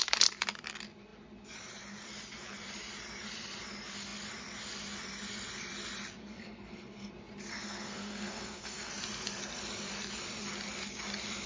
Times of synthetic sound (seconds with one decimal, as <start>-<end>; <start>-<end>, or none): 6.2-7.1; 7.5-8.9